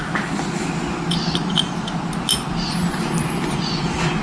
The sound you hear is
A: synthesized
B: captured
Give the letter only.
B